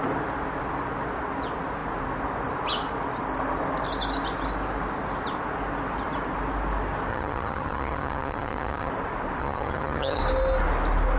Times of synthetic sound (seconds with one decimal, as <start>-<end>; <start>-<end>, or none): 7.1-8.9; 9.4-10.2